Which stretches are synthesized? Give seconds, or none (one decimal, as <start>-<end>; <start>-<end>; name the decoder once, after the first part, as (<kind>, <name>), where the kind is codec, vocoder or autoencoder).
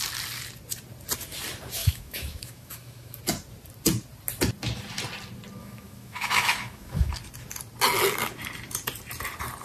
1.8-3.2 (autoencoder, DAC-VAE); 5.6-7.1